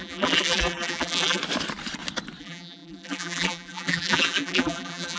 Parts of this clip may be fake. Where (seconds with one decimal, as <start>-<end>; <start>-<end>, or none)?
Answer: 0.0-1.4; 2.4-5.2